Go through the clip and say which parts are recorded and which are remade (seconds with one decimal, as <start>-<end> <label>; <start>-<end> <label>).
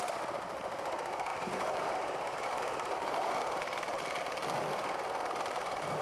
0.0-1.3 recorded; 1.3-4.0 remade; 4.0-6.0 recorded